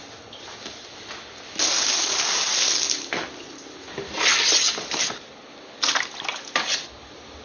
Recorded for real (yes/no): yes